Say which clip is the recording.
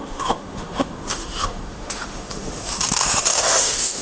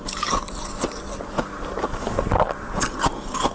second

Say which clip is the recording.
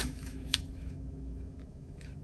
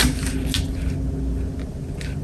second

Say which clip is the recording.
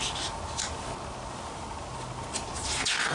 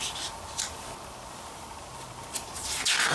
first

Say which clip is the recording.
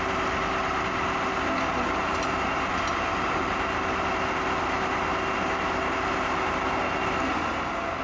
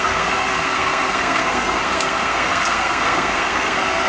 first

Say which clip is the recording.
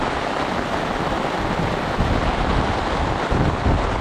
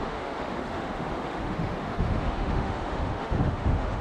first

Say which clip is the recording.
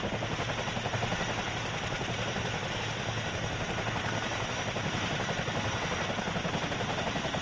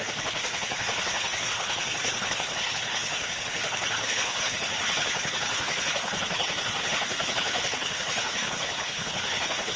first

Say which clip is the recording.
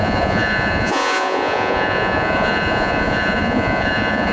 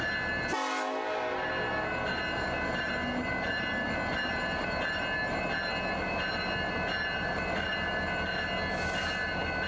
second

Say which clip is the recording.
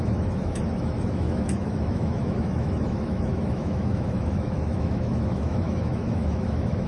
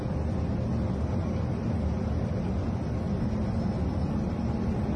second